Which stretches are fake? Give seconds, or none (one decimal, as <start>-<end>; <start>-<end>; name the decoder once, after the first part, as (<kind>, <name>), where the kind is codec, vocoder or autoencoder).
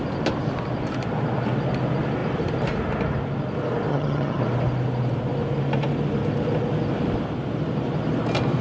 3.9-4.4 (vocoder, HiFi-GAN)